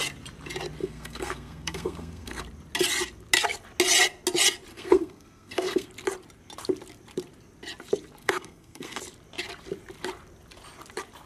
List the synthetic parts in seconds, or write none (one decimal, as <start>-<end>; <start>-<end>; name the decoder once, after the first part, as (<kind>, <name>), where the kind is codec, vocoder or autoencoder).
0.8-2.4 (codec, SNAC); 4.7-5.9; 8.2-9.0